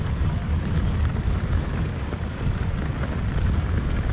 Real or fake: fake